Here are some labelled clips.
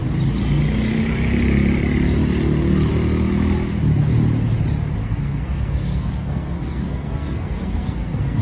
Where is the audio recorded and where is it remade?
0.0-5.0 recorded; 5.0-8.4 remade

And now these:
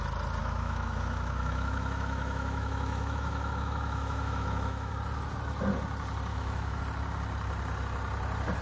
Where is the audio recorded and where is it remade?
0.0-0.4 recorded; 0.4-4.9 remade; 4.9-6.3 recorded; 6.3-6.8 remade; 6.8-8.6 recorded

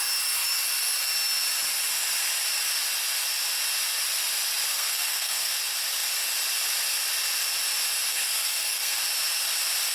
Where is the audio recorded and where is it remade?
0.0-4.7 recorded; 4.7-5.5 remade; 5.5-8.1 recorded; 8.1-9.0 remade; 9.0-9.9 recorded

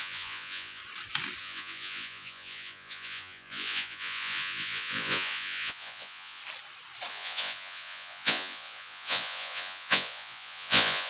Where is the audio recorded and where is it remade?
0.0-0.8 remade; 0.8-1.4 recorded; 1.4-6.4 remade; 6.4-7.1 recorded; 7.1-11.1 remade